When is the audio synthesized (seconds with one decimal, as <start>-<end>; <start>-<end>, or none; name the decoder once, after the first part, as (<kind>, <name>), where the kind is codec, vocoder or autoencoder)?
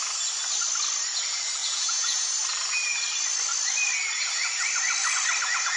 1.6-2.3 (vocoder, Vocos)